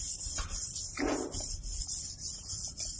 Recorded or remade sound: recorded